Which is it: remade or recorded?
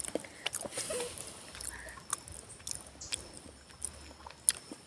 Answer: recorded